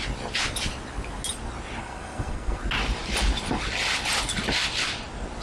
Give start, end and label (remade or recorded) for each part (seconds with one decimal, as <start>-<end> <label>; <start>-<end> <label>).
0.0-1.8 recorded; 1.8-2.6 remade; 2.6-5.4 recorded